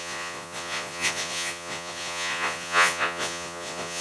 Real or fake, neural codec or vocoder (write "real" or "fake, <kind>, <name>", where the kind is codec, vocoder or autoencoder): fake, vocoder, Vocos